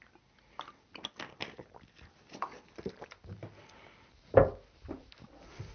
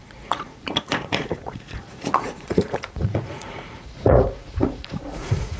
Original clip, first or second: first